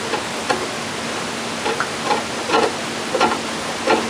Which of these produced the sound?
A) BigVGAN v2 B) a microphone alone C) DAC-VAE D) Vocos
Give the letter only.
B